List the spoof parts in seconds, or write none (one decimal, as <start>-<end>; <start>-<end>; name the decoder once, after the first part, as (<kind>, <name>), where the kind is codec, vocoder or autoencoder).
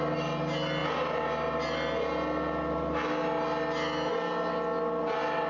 none